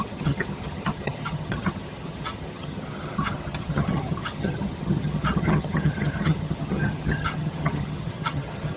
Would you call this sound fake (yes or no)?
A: yes